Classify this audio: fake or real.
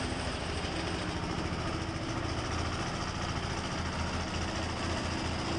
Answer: real